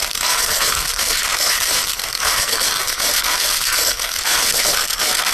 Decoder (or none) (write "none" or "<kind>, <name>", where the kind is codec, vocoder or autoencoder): codec, SNAC